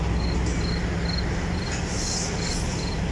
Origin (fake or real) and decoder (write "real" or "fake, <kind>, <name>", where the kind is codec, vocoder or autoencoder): real